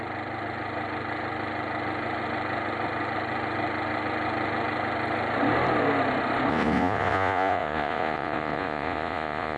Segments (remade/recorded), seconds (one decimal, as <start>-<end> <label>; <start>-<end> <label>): 0.0-6.5 recorded; 6.5-9.6 remade